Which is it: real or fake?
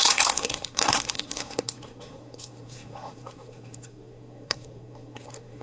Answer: fake